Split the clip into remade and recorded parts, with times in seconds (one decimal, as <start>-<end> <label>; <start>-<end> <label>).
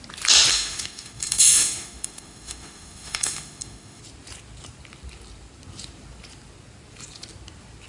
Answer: 0.0-0.5 recorded; 0.5-4.0 remade; 4.0-7.9 recorded